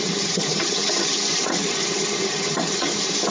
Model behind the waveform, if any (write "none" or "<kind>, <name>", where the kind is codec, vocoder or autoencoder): vocoder, HiFi-GAN